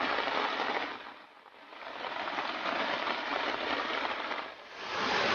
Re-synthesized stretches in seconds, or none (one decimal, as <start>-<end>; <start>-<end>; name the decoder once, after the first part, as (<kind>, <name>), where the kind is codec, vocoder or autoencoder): 1.7-2.7 (vocoder, BigVGAN v2); 3.3-5.3